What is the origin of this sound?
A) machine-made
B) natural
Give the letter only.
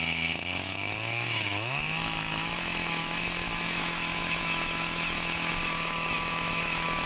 A